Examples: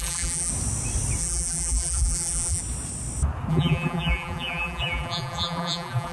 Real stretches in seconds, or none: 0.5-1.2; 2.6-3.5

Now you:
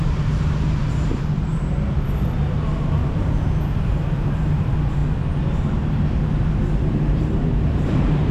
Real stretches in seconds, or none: 5.0-6.5